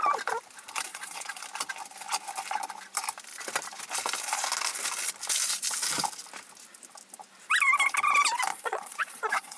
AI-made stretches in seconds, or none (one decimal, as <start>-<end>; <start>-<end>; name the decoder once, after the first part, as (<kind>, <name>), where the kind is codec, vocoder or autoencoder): 0.9-1.4 (vocoder, Vocos); 8.5-9.6